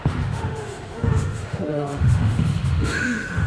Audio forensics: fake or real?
fake